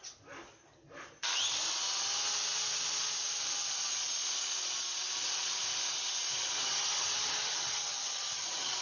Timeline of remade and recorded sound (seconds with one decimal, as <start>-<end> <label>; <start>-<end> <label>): 0.0-8.8 recorded